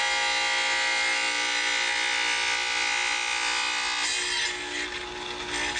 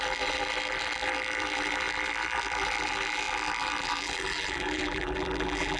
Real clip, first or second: first